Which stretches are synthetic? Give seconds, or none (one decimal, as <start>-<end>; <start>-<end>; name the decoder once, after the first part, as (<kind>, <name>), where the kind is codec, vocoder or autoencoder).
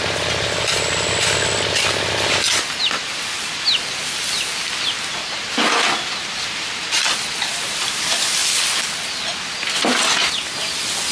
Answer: none